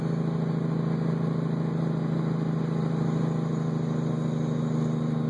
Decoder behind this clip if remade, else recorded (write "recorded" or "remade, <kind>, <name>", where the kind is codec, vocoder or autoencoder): recorded